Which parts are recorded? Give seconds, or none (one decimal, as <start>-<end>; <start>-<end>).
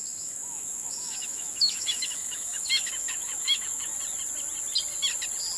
3.9-5.6